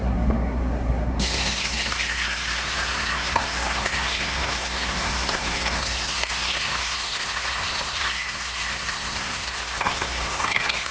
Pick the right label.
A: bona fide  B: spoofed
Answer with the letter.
B